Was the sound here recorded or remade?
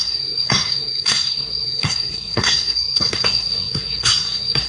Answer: remade